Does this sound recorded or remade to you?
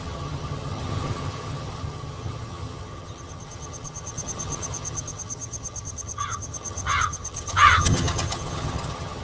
remade